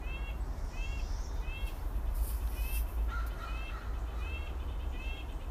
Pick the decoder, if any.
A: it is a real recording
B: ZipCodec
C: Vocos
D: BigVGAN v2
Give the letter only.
A